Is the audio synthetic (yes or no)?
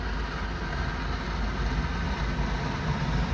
no